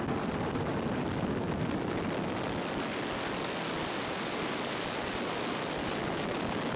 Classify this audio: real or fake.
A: real